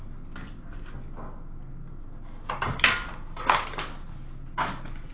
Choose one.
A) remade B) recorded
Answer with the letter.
B